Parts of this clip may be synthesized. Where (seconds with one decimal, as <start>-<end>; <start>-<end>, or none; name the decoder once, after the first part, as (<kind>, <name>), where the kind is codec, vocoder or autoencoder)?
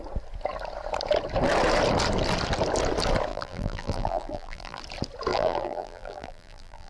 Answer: 3.3-4.8 (vocoder, BigVGAN v2); 5.3-6.9